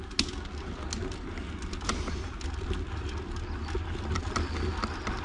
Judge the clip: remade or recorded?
recorded